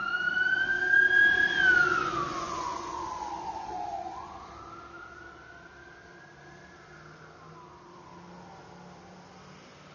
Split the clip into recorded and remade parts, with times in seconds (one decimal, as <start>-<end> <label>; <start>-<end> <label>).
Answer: 0.0-1.9 recorded; 1.9-4.5 remade; 4.5-9.9 recorded

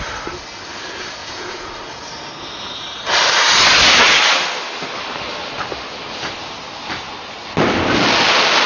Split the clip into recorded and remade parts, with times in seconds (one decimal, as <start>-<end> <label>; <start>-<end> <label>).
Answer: 0.0-1.2 recorded; 1.2-1.7 remade; 1.7-8.7 recorded

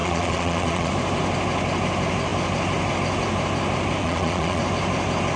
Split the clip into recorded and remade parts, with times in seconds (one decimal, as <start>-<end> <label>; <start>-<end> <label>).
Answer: 0.0-0.9 remade; 0.9-4.0 recorded; 4.0-4.6 remade; 4.6-5.4 recorded

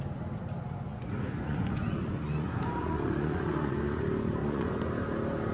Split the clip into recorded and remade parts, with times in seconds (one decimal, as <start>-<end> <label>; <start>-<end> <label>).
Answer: 0.0-0.9 recorded; 0.9-4.0 remade; 4.0-4.4 recorded; 4.4-4.9 remade; 4.9-5.5 recorded

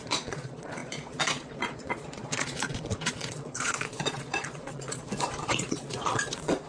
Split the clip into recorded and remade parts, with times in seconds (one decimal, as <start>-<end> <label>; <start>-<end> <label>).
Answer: 0.0-5.0 remade; 5.0-5.6 recorded; 5.6-6.7 remade

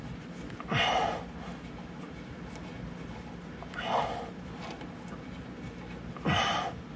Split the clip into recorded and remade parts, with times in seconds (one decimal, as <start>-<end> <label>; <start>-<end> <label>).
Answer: 0.0-7.0 recorded

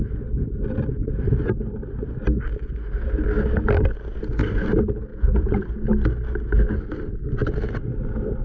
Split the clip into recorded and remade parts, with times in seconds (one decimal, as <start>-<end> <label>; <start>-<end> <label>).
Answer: 0.0-5.1 recorded; 5.1-5.6 remade; 5.6-8.4 recorded

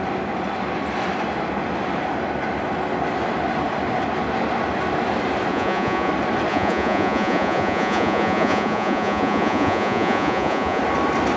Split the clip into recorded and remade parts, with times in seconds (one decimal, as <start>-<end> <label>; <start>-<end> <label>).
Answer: 0.0-5.5 recorded; 5.5-6.1 remade; 6.1-6.5 recorded; 6.5-10.8 remade; 10.8-11.4 recorded